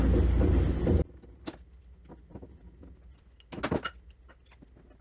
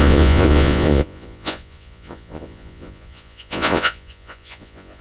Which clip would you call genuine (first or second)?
first